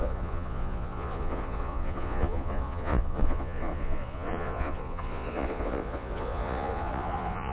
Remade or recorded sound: remade